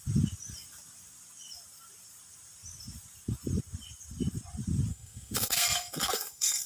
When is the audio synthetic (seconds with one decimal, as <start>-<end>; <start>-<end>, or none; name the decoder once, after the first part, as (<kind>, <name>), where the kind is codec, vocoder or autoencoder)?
4.9-6.7 (codec, SNAC)